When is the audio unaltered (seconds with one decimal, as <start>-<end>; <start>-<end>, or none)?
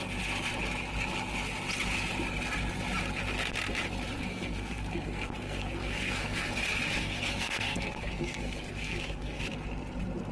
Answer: 0.0-4.3; 6.5-7.0; 9.4-10.3